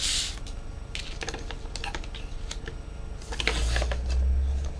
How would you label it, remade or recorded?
recorded